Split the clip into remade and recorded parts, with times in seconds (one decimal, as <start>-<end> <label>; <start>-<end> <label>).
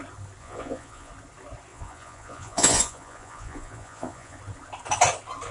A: 0.0-0.4 recorded; 0.4-1.1 remade; 1.1-1.7 recorded; 1.7-4.4 remade; 4.4-5.5 recorded